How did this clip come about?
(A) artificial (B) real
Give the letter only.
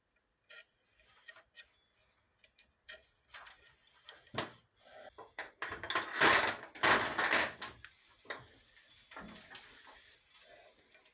B